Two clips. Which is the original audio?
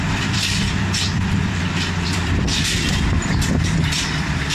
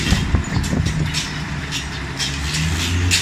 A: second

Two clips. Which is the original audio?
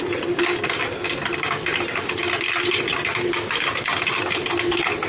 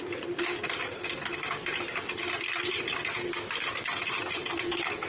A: first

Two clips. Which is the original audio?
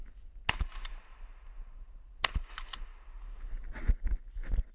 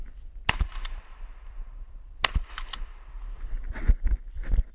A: first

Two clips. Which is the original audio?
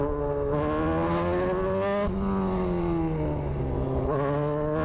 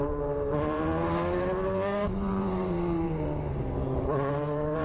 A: first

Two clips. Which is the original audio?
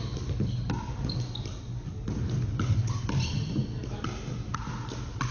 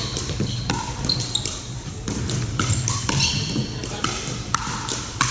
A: first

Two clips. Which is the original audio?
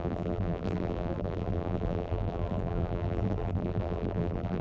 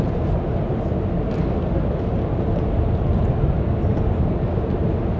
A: second